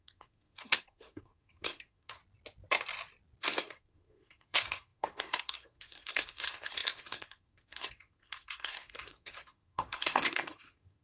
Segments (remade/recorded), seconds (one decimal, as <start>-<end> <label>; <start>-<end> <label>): 0.0-2.2 remade; 2.2-3.4 recorded; 3.4-11.0 remade